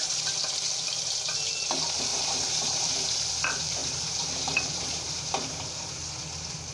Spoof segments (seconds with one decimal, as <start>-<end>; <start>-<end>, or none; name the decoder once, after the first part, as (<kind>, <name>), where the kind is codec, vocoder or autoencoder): 2.1-2.9 (vocoder, BigVGAN v2); 3.8-5.8